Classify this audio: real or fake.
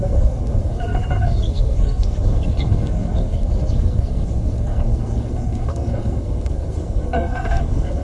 fake